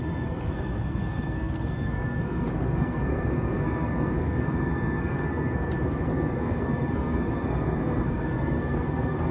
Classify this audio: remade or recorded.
remade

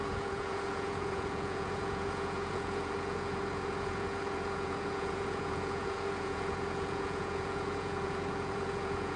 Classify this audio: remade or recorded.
remade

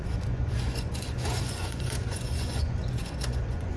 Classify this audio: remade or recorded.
remade